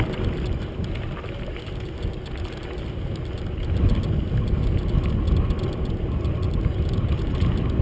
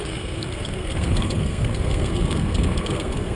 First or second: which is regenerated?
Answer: second